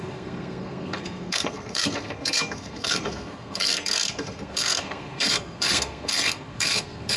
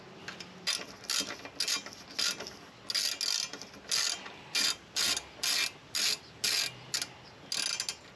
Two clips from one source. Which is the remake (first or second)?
first